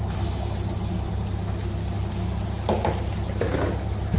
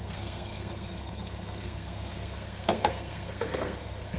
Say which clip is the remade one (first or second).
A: second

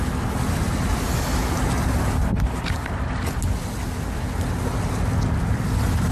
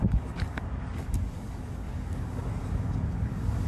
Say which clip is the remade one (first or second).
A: second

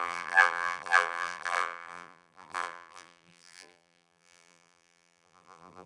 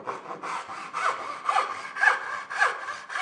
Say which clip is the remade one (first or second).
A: first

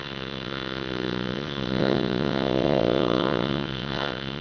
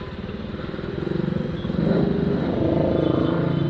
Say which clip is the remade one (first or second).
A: first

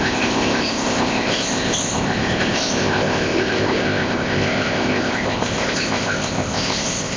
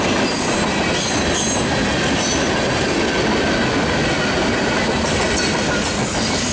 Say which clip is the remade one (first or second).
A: first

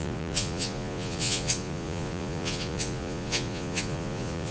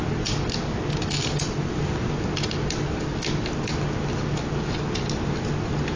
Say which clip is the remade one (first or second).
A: first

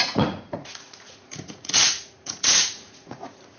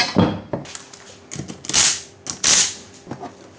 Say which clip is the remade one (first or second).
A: first